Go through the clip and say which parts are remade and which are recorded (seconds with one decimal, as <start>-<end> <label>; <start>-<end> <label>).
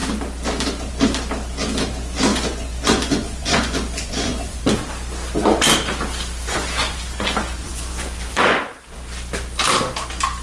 0.0-2.3 recorded; 2.3-4.6 remade; 4.6-6.4 recorded; 6.4-8.6 remade; 8.6-10.4 recorded